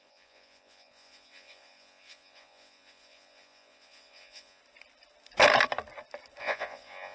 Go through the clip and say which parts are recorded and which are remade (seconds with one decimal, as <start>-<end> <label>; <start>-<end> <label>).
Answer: 0.0-4.6 remade; 4.6-6.4 recorded; 6.4-7.1 remade

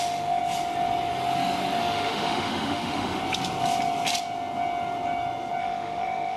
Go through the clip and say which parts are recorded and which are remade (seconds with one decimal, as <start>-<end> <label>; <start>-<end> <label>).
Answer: 0.0-0.4 remade; 0.4-1.8 recorded; 1.8-3.2 remade; 3.2-5.6 recorded; 5.6-6.4 remade

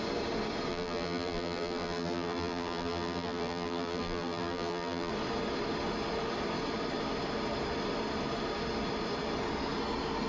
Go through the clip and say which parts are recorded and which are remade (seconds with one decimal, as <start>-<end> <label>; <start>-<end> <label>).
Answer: 0.0-0.7 recorded; 0.7-5.1 remade; 5.1-10.3 recorded

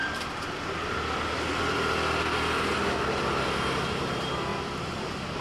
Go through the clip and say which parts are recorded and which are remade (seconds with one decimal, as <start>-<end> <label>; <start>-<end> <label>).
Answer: 0.0-1.8 remade; 1.8-4.5 recorded; 4.5-5.4 remade